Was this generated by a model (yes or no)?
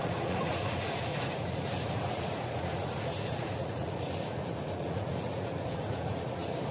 yes